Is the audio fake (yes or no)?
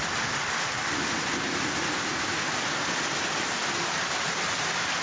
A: no